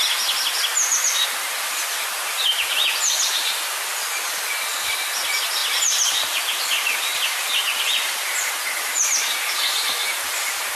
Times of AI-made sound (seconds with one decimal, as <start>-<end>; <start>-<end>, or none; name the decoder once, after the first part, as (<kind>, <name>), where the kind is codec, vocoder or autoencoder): 5.6-8.5 (vocoder, BigVGAN v2)